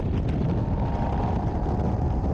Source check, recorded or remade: recorded